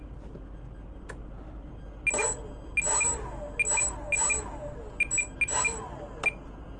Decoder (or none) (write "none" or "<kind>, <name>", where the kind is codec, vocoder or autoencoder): none